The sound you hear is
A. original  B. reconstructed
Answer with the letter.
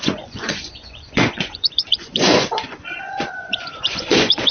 B